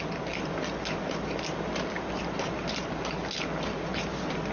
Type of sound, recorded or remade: recorded